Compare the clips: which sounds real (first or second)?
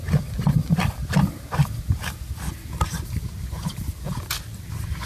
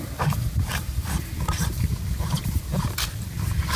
first